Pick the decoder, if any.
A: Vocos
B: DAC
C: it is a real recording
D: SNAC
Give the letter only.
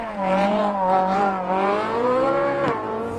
A